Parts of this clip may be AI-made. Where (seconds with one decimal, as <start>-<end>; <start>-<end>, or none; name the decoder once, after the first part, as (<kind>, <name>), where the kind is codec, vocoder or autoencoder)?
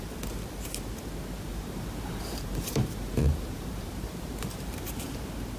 1.5-4.9 (vocoder, BigVGAN v2)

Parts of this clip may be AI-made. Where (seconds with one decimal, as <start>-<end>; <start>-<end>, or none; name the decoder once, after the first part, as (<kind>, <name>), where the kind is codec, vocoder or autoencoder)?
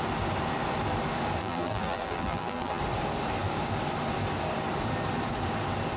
1.4-2.8 (vocoder, BigVGAN v2)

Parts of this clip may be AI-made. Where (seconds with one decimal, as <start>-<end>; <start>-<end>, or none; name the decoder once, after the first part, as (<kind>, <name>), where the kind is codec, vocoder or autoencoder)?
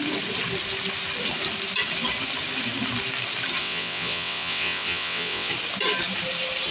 3.6-5.5 (vocoder, WaveNeXt)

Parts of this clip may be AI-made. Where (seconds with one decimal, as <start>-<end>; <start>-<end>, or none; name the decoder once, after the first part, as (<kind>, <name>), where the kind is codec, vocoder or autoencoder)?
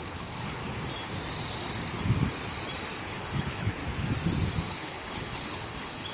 0.0-0.6 (codec, HILCodec); 3.0-3.8; 4.7-6.1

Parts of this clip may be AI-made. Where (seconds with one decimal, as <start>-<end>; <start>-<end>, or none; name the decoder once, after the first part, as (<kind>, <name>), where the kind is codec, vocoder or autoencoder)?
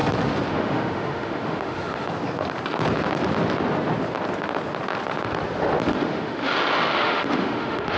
0.5-2.1 (autoencoder, DAC-VAE); 5.9-6.5; 7.0-8.0